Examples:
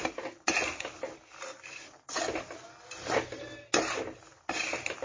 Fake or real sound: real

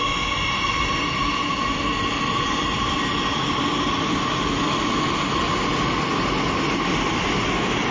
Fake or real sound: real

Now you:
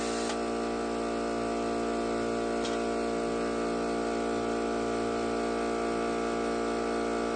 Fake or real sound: real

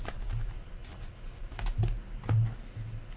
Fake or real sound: real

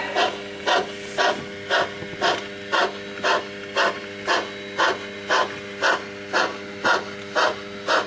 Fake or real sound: real